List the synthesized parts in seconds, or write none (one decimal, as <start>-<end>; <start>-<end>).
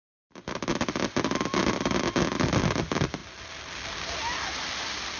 none